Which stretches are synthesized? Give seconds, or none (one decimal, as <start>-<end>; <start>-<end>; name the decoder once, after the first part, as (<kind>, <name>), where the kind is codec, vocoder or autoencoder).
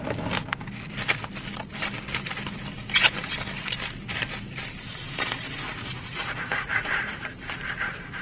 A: 5.7-7.2 (vocoder, Vocos)